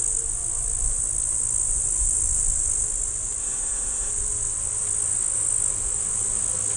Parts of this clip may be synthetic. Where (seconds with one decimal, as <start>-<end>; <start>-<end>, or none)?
3.4-4.1